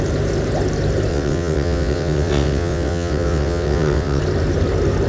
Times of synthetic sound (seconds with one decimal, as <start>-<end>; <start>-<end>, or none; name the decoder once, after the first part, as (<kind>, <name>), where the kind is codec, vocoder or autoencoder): 1.1-4.2 (vocoder, WaveNeXt)